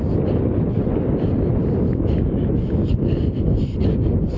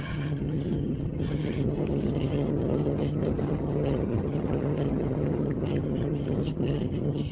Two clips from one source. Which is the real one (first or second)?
first